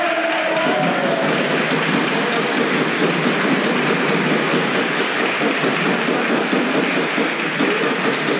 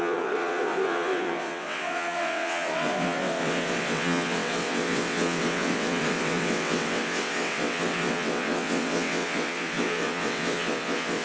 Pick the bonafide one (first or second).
first